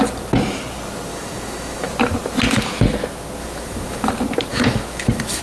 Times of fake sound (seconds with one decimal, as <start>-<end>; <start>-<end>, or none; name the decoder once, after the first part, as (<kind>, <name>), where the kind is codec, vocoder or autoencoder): 1.1-1.9 (autoencoder, DAC-VAE); 3.4-4.1; 4.5-5.4

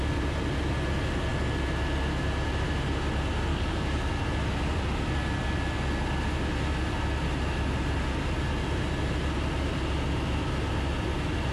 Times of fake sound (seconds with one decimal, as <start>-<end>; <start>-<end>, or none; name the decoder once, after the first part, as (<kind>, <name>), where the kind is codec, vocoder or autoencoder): 3.5-4.1 (codec, DAC)

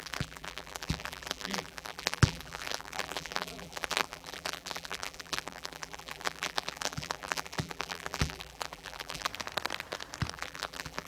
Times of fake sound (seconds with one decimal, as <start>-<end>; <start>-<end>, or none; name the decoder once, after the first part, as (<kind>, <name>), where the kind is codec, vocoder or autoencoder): 0.0-9.3 (vocoder, BigVGAN v2); 10.3-11.1

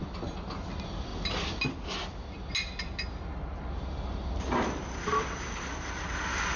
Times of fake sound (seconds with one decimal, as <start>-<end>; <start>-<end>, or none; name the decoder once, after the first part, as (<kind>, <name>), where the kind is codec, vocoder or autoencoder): none

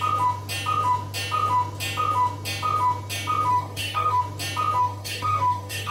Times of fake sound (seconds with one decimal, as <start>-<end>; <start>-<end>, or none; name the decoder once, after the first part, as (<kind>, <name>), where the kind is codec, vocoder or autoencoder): 3.5-4.2 (codec, DAC); 4.8-5.9

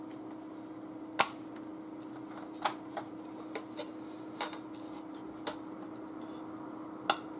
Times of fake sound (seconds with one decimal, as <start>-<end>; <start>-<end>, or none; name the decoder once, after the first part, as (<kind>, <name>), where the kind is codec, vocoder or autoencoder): none

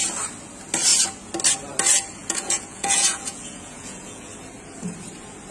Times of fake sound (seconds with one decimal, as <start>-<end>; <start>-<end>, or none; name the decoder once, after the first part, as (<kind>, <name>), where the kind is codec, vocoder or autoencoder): 2.2-4.3 (vocoder, Vocos)

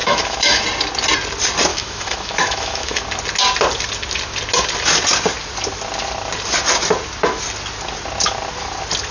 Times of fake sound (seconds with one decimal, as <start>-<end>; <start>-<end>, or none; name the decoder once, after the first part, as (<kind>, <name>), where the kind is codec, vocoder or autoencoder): 0.0-0.6 (autoencoder, DAC-VAE); 1.7-3.0